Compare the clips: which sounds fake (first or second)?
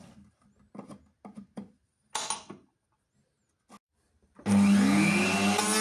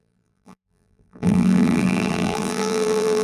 second